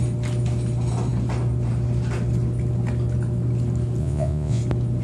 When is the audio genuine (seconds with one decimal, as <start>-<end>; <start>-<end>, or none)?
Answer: 0.0-4.0; 4.6-5.0